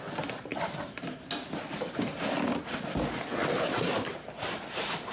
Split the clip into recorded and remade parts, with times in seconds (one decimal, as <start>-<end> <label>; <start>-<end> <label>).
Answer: 0.0-5.1 recorded